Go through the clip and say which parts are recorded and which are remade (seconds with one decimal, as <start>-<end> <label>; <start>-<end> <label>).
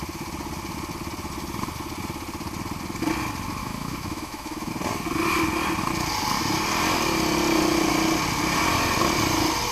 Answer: 0.0-3.6 recorded; 3.6-4.7 remade; 4.7-9.7 recorded